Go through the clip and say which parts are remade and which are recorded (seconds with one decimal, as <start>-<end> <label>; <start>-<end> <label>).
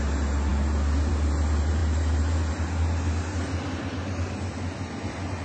0.0-5.4 recorded